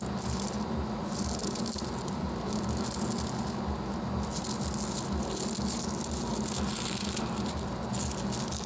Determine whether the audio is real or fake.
real